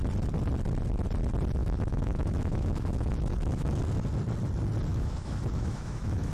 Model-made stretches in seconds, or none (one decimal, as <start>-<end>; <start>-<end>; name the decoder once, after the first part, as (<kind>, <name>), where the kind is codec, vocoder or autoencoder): 1.6-3.8 (autoencoder, DAC-VAE); 4.9-6.3